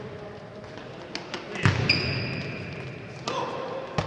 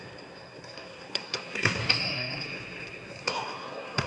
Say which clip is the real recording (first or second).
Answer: first